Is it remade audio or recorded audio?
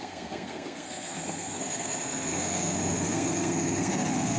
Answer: remade